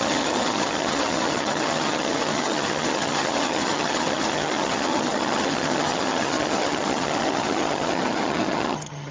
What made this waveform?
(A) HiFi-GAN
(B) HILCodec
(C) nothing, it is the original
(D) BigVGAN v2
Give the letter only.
A